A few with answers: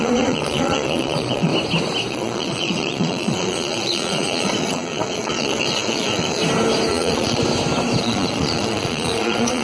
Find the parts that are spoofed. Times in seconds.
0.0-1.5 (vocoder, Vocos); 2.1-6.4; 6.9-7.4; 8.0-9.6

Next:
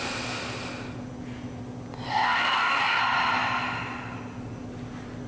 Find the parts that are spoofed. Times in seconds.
2.1-3.0 (codec, DAC)

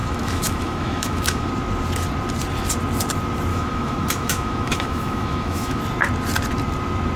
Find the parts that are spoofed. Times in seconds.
0.0-1.5 (autoencoder, DAC-VAE); 3.5-5.8

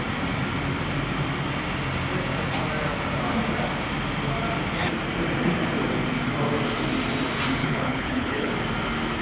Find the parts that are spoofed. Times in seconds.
7.6-8.5 (codec, HILCodec)

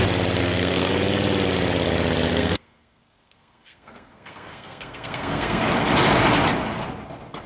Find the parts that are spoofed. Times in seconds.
0.4-0.9 (codec, SNAC); 2.3-5.6

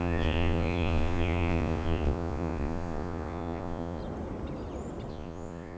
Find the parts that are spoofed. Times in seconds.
0.0-4.0 (vocoder, Vocos); 5.1-5.8

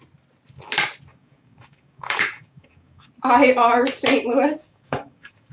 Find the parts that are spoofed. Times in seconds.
1.1-3.1 (codec, DAC); 4.6-5.5